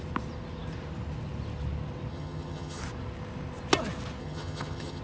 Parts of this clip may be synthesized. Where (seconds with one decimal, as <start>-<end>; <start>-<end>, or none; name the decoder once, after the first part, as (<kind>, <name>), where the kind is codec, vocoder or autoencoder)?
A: 2.1-2.8 (vocoder, HiFi-GAN); 4.2-5.0